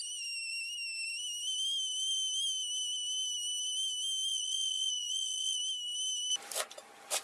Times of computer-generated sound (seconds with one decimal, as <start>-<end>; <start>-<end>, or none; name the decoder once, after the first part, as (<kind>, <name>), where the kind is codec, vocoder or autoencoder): 4.3-5.6 (vocoder, Vocos)

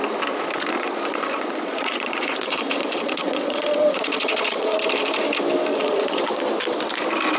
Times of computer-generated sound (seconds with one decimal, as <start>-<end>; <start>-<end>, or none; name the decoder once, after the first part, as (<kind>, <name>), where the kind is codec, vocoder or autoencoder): 0.7-4.8 (vocoder, Vocos); 5.7-6.3

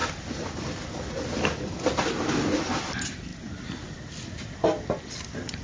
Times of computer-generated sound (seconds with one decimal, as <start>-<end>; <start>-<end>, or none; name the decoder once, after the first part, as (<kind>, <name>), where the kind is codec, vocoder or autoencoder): none

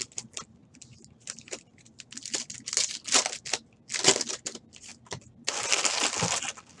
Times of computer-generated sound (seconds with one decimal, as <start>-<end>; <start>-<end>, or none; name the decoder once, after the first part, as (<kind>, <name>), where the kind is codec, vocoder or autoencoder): none

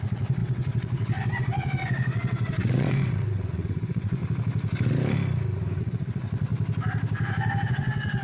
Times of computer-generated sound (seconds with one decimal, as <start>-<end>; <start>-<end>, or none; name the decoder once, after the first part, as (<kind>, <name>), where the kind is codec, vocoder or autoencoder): 0.0-4.2 (vocoder, WaveNeXt); 5.8-6.5; 7.7-8.2

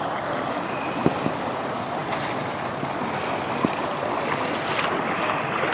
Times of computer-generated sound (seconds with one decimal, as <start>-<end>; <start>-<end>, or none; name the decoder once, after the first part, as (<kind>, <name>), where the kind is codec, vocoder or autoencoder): none

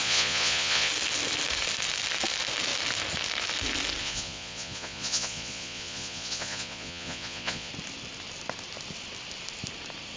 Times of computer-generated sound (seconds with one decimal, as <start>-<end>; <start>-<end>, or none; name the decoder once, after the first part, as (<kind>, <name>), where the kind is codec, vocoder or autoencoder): 0.0-0.9 (vocoder, Vocos); 4.0-7.7